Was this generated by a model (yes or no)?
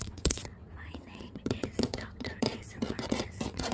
yes